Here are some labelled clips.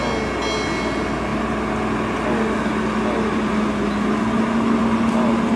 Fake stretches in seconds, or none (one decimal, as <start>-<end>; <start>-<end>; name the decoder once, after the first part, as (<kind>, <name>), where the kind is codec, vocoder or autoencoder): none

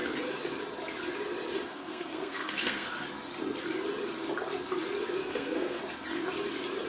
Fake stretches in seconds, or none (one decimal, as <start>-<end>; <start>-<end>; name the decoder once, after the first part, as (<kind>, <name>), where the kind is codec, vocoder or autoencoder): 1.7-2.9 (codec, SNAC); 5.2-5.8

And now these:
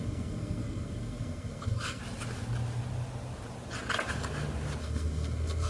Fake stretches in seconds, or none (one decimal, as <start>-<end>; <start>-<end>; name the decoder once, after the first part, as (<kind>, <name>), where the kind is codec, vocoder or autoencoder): 0.0-2.0 (codec, SNAC); 4.8-5.7